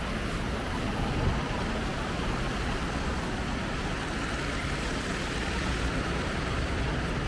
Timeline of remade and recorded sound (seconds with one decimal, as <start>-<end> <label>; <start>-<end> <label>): 0.0-7.3 recorded